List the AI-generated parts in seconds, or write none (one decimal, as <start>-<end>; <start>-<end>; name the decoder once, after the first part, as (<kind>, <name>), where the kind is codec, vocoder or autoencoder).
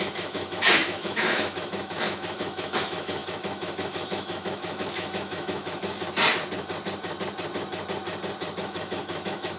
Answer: 0.0-5.8 (autoencoder, DAC-VAE); 8.6-9.6